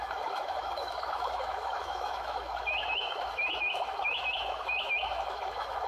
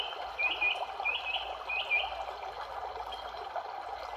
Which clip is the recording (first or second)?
second